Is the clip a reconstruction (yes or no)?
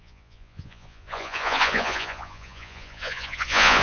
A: yes